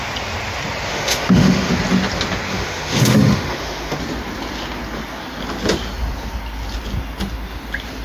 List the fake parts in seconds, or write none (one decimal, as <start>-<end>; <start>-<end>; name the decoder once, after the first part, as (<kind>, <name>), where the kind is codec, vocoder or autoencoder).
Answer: 0.9-1.7 (autoencoder, DAC-VAE); 2.5-4.0